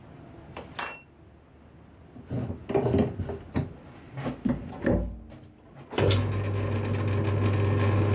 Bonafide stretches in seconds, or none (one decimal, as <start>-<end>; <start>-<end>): 0.0-8.1